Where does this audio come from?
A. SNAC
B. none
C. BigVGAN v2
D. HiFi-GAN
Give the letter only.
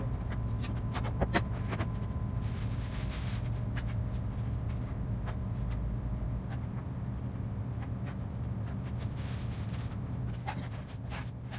B